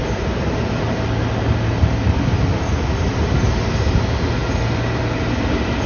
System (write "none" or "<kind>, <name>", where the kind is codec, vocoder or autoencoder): none